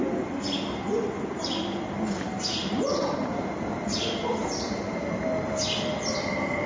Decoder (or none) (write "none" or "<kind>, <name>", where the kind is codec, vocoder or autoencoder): none